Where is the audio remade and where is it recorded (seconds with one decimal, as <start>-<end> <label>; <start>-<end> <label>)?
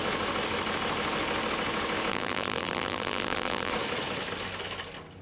0.0-2.1 recorded; 2.1-3.7 remade; 3.7-5.2 recorded